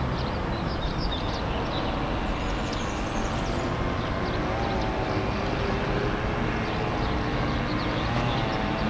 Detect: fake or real real